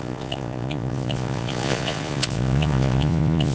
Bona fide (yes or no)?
no